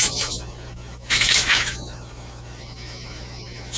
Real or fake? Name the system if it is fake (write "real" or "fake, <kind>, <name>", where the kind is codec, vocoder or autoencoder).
fake, autoencoder, DAC-VAE